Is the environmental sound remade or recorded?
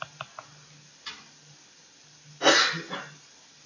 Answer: recorded